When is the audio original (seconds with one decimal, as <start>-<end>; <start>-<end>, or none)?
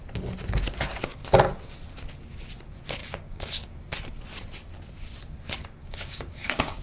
0.0-3.0; 3.5-5.8